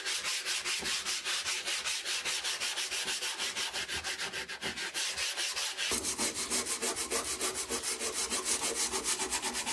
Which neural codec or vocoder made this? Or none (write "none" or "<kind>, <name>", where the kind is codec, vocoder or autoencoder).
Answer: none